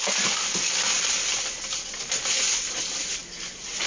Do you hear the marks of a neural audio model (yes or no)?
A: no